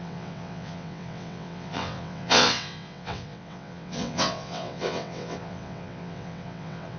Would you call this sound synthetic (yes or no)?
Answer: yes